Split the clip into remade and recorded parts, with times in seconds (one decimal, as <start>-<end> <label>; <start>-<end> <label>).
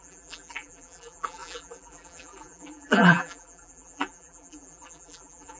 0.0-5.6 remade